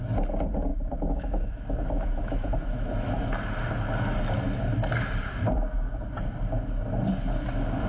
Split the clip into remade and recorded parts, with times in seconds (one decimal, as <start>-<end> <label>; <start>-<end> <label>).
0.0-0.7 recorded; 0.7-3.3 remade; 3.3-7.9 recorded